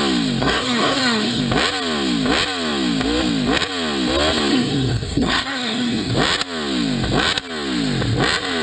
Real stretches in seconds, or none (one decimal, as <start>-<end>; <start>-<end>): 0.0-0.4; 1.4-4.5; 6.1-8.6